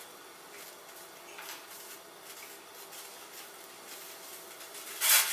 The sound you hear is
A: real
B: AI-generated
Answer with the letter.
A